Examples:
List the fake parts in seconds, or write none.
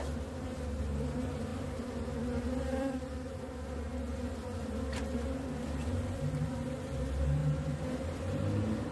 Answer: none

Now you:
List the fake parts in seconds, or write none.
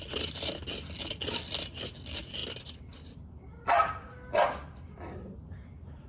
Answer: none